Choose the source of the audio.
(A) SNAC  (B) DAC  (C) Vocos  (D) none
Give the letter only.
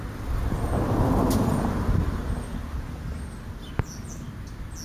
D